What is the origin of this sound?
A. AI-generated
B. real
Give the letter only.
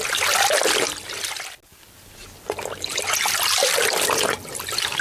B